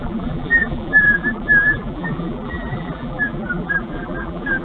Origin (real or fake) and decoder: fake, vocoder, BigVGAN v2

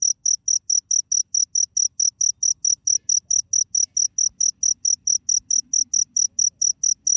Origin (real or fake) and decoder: real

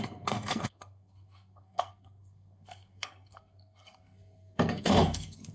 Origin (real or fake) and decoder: fake, codec, SNAC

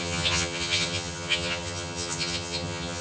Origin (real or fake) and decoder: fake, vocoder, HiFi-GAN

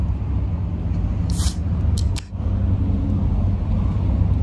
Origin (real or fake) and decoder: real